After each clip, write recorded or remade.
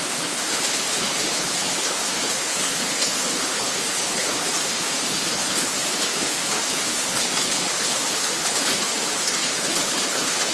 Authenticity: remade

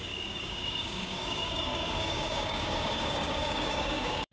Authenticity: remade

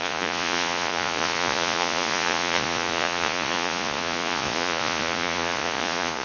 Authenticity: remade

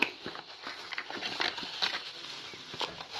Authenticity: recorded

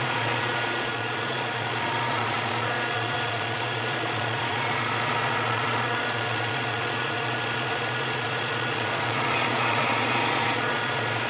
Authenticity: remade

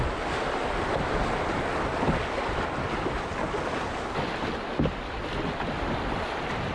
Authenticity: recorded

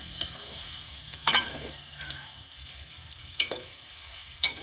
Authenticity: remade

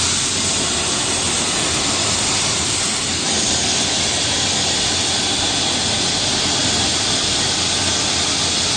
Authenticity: recorded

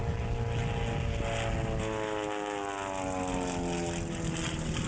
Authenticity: recorded